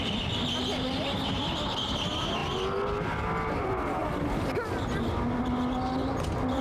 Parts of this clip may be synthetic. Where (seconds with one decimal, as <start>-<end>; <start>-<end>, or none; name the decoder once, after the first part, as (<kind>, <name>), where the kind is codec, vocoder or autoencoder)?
none